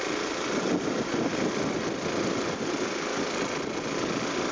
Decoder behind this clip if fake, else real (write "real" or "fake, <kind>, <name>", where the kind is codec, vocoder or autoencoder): real